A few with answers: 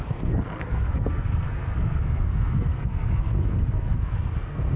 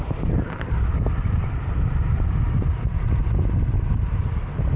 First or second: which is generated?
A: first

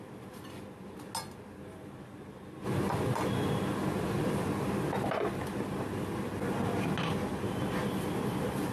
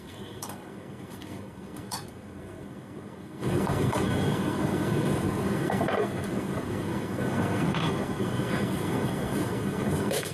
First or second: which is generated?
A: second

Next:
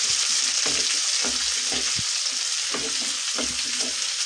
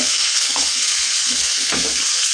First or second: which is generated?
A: second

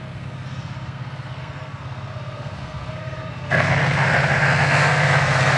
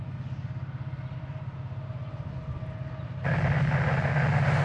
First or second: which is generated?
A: first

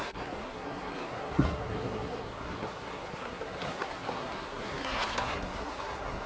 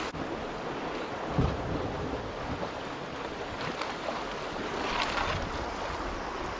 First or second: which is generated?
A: first